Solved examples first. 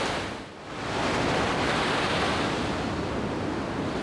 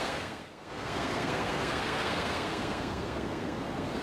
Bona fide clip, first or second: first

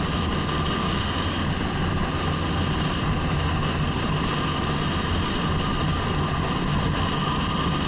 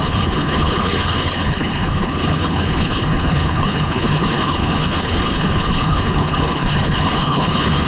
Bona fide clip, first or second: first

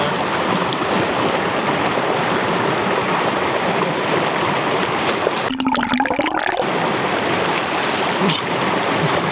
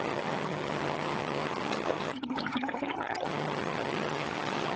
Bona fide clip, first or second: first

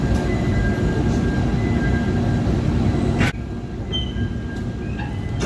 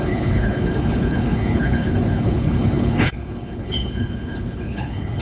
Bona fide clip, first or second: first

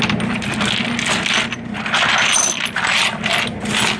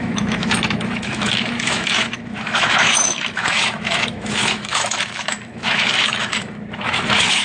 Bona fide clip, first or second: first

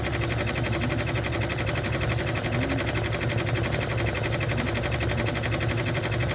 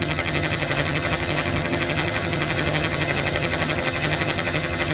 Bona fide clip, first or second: first